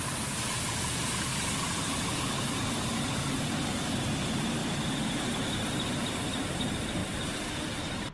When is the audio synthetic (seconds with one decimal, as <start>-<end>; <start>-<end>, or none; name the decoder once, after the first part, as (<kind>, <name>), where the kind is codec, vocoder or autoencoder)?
0.0-1.3 (vocoder, BigVGAN v2); 2.7-4.6; 5.2-8.1